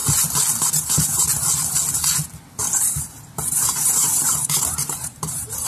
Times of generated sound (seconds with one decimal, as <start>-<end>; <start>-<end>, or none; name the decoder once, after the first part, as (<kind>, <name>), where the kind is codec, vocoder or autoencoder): 0.6-1.3 (vocoder, BigVGAN v2); 2.6-5.7